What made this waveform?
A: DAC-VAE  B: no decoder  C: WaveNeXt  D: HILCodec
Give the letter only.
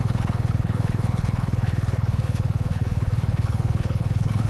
D